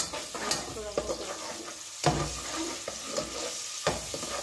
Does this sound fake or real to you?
real